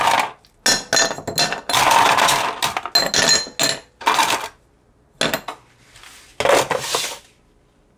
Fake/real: real